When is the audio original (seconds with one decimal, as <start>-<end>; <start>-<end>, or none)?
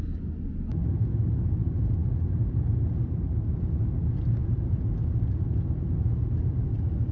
0.0-7.1